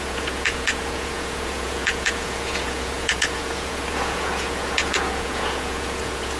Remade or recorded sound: remade